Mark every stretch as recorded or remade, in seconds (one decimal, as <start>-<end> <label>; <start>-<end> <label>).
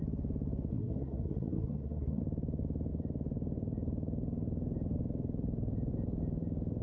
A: 0.0-0.7 recorded; 0.7-2.2 remade; 2.2-6.8 recorded